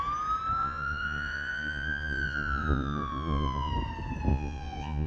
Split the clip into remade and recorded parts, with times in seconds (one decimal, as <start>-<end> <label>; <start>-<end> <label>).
0.0-0.6 recorded; 0.6-3.7 remade; 3.7-4.3 recorded; 4.3-5.1 remade